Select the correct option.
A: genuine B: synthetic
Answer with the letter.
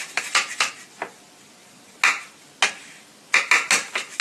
A